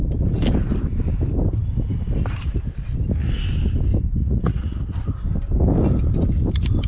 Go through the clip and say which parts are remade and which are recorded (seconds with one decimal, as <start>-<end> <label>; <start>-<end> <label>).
0.0-4.2 recorded; 4.2-4.8 remade; 4.8-6.9 recorded